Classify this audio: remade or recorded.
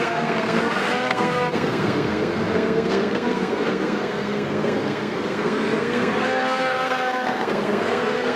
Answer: remade